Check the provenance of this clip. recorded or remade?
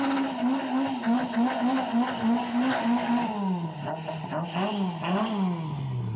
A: recorded